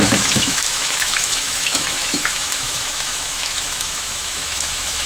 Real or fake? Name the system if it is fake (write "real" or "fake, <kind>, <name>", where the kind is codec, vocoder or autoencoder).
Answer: fake, autoencoder, DAC-VAE